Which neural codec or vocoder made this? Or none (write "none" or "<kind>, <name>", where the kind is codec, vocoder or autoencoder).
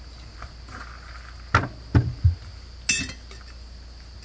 none